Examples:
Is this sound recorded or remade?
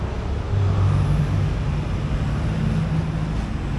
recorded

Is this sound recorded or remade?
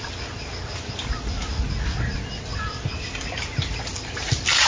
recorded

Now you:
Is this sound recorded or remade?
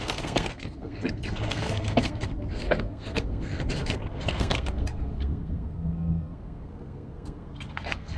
remade